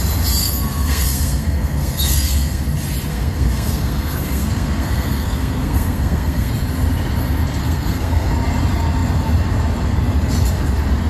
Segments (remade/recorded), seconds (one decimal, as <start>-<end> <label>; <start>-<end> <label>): 0.0-0.4 recorded; 0.4-2.6 remade; 2.6-3.1 recorded; 3.1-6.5 remade; 6.5-7.6 recorded; 7.6-8.3 remade; 8.3-11.1 recorded